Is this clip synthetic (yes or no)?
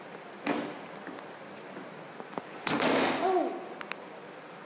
no